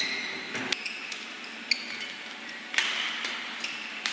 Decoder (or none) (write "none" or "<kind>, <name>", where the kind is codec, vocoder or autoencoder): none